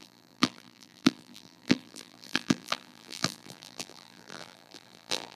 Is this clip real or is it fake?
fake